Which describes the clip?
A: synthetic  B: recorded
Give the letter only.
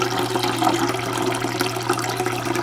A